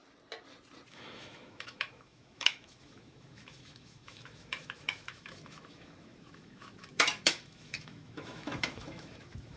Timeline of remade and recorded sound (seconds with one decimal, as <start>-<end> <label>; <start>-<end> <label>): 0.0-0.9 recorded; 0.9-9.6 remade